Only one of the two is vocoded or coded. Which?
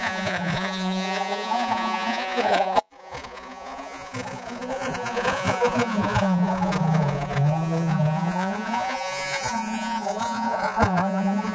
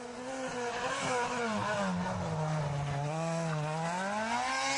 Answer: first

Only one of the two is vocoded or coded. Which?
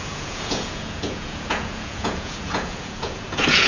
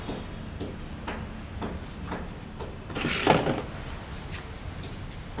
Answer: first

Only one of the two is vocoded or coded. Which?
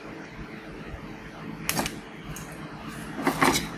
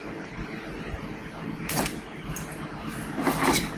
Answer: second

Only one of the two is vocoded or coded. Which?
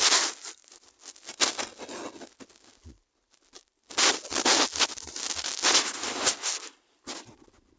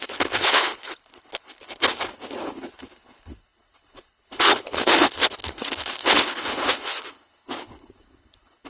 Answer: second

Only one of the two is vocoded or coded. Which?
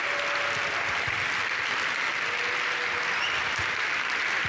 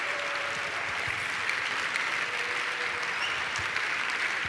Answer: second